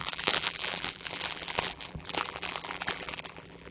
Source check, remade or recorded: remade